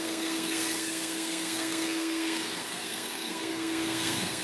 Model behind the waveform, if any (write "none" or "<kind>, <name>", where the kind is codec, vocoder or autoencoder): codec, SNAC